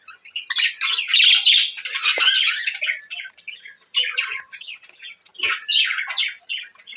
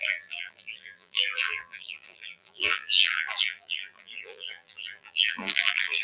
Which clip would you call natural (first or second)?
first